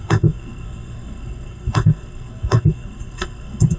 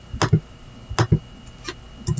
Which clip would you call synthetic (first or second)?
first